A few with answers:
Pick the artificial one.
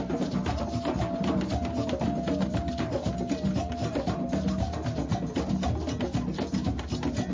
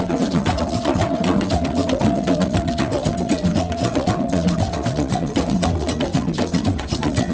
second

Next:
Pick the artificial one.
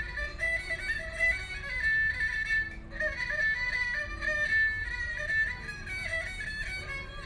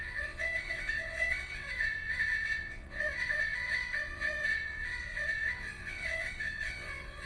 second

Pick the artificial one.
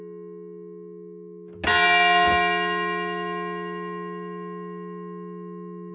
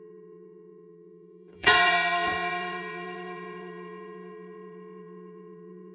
second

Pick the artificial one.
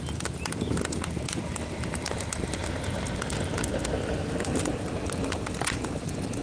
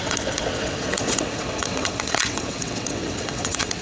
second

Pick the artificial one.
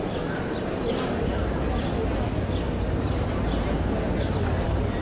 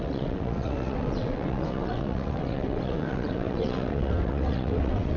second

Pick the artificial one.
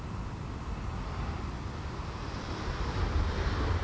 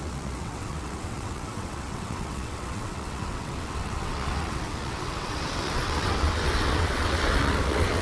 second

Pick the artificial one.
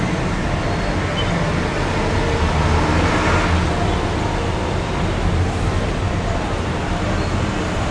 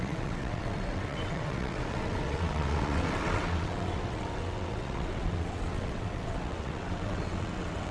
second